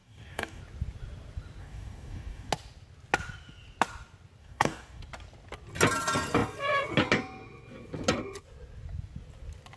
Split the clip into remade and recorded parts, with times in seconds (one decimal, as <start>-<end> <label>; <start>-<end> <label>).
0.0-0.6 remade; 0.6-1.6 recorded; 1.6-2.5 remade; 2.5-4.4 recorded; 4.4-5.0 remade; 5.0-9.8 recorded

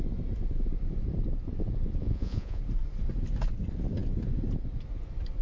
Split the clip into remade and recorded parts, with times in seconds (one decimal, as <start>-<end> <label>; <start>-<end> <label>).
0.0-2.0 recorded; 2.0-2.6 remade; 2.6-5.4 recorded

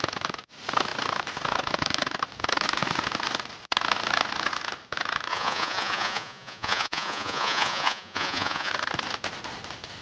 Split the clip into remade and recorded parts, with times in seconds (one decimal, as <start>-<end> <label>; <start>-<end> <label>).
0.0-5.3 recorded; 5.3-8.7 remade; 8.7-10.0 recorded

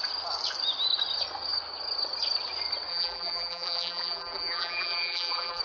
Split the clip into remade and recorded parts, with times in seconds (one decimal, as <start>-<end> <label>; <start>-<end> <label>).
0.0-2.9 recorded; 2.9-5.6 remade